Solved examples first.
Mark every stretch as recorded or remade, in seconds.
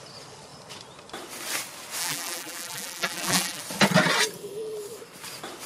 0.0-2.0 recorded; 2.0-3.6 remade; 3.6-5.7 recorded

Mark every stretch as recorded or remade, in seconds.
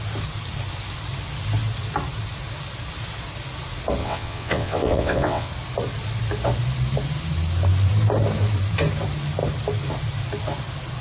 0.0-4.0 recorded; 4.0-5.5 remade; 5.5-11.0 recorded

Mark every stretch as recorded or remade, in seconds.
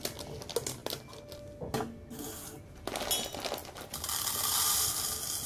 0.0-3.6 recorded; 3.6-4.3 remade; 4.3-5.5 recorded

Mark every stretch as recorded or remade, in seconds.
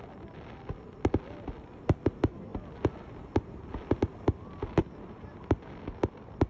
0.0-6.5 recorded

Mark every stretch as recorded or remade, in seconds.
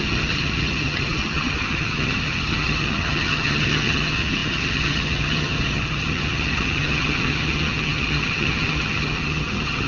0.0-9.9 remade